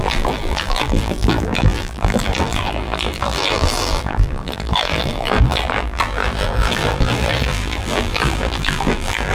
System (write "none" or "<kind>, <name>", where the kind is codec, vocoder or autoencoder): vocoder, BigVGAN v2